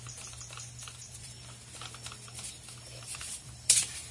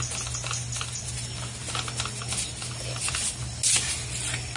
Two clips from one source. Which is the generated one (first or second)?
first